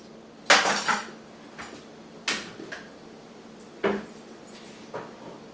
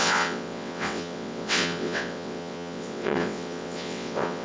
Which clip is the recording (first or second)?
first